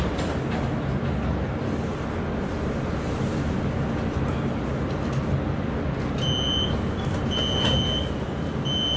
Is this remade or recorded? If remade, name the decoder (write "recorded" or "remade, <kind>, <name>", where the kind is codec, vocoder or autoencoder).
recorded